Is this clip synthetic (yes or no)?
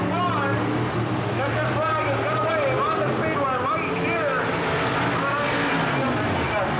no